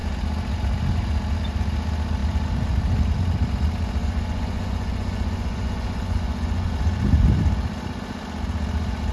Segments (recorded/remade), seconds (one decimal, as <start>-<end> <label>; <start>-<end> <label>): 0.0-4.0 recorded; 4.0-6.7 remade; 6.7-9.1 recorded